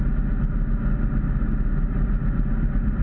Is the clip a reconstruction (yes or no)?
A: no